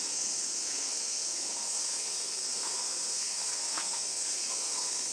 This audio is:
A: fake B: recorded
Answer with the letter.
A